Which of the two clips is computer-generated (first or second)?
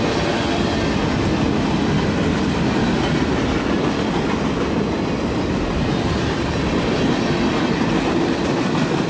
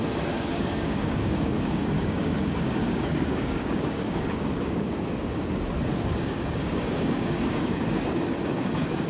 second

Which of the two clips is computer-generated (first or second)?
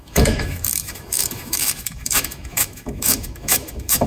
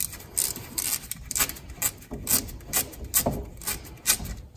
first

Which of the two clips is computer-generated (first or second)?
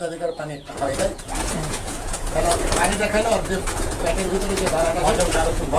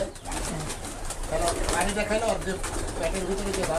first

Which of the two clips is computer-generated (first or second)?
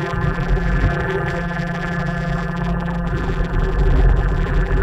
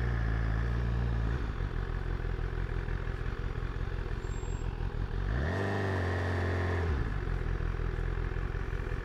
first